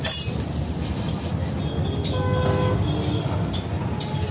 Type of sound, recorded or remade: recorded